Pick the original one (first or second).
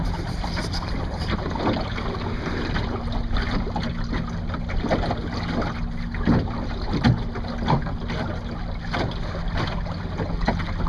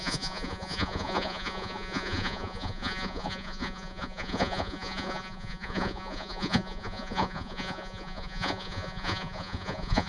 first